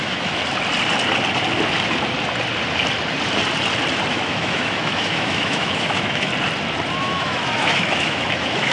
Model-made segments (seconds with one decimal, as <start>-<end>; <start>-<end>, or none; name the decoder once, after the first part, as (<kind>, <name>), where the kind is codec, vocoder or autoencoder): 0.0-0.4 (autoencoder, DAC-VAE); 4.1-6.3; 6.9-8.7